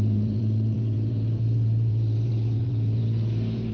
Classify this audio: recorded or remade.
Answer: remade